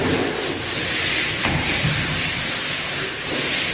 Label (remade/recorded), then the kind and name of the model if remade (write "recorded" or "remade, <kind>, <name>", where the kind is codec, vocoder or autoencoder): recorded